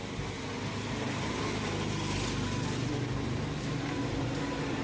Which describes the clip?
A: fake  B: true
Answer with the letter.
B